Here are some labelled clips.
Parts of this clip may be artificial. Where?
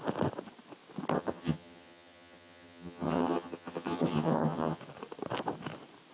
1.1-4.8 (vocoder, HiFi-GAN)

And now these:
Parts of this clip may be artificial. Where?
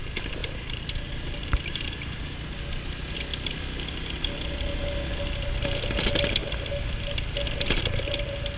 0.4-2.5 (vocoder, BigVGAN v2)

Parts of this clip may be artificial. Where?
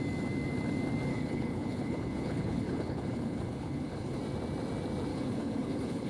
1.1-4.2 (codec, HILCodec); 5.1-6.1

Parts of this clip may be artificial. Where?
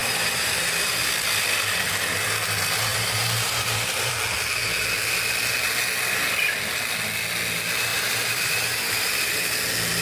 0.0-0.9 (vocoder, BigVGAN v2); 2.9-4.1; 7.9-9.3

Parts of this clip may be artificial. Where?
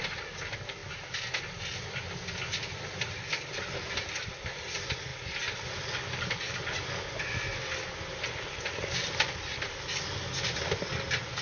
none